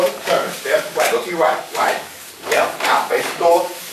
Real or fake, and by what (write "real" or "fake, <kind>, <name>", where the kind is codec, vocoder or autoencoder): fake, codec, DAC